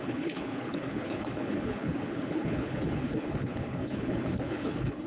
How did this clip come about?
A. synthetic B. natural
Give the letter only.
A